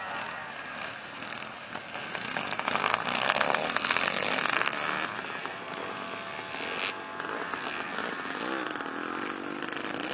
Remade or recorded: recorded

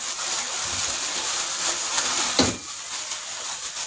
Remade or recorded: recorded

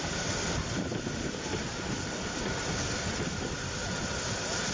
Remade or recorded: recorded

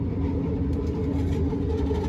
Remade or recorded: recorded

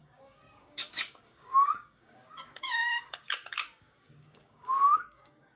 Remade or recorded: remade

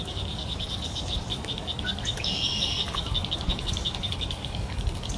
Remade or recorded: remade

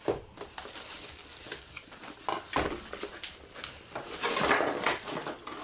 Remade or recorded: recorded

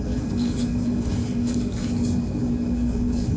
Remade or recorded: remade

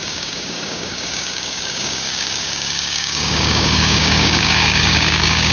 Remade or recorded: remade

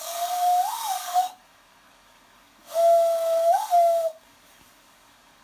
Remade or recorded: remade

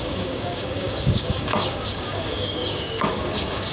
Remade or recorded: remade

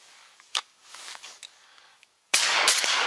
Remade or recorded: remade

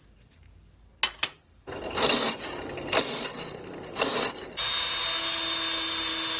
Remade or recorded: recorded